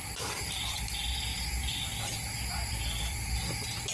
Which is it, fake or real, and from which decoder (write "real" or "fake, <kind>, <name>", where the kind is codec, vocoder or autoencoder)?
real